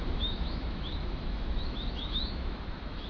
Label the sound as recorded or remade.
remade